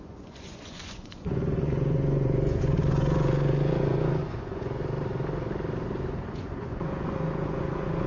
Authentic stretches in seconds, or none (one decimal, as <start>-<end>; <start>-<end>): 4.8-6.3